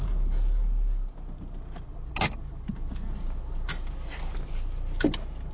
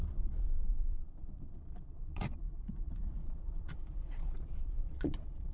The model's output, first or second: second